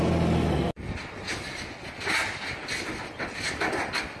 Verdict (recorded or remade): recorded